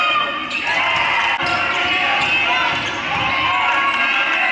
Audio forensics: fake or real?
real